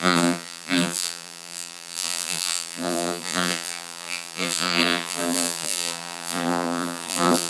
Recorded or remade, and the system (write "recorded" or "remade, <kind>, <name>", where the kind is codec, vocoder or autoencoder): remade, vocoder, BigVGAN v2